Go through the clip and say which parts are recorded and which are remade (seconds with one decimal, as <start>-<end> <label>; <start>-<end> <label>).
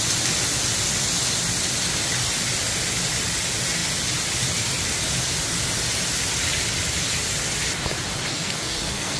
0.0-8.3 recorded; 8.3-9.2 remade